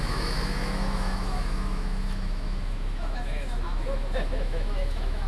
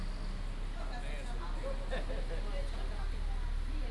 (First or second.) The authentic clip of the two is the second